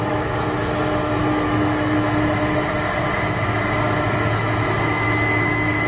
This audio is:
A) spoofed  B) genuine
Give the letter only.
A